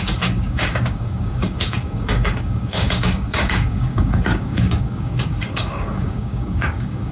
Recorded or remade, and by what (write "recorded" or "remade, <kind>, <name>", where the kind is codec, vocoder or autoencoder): remade, codec, DAC